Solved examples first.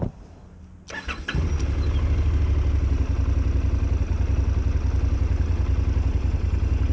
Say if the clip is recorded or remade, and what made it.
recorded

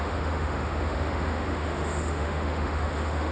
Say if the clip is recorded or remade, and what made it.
remade, autoencoder, DAC-VAE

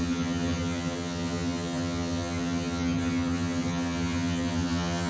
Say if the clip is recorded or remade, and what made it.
remade, vocoder, HiFi-GAN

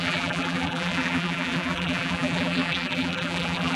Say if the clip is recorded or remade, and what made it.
remade, vocoder, BigVGAN v2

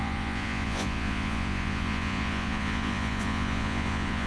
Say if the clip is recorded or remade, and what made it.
remade, vocoder, Vocos